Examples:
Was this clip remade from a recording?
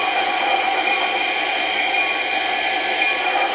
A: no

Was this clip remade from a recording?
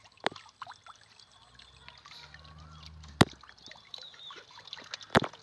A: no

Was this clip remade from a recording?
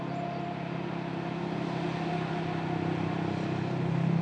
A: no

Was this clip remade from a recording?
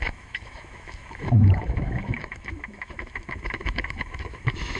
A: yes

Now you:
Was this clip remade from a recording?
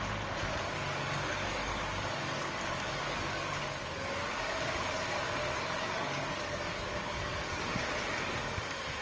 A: yes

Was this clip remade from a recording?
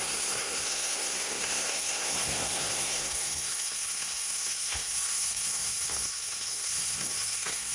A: yes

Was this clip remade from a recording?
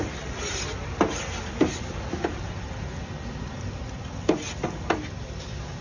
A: no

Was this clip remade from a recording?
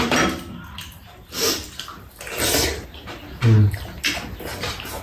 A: no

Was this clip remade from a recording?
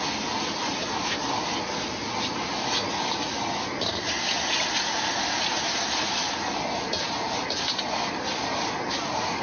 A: no